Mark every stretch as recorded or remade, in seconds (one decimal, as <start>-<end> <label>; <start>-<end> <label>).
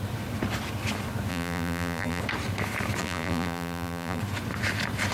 0.0-1.3 recorded; 1.3-2.2 remade; 2.2-3.0 recorded; 3.0-4.2 remade; 4.2-5.1 recorded